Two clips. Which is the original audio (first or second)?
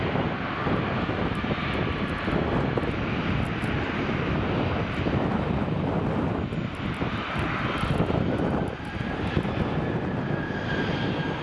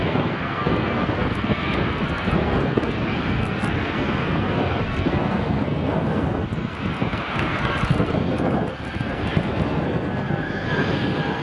first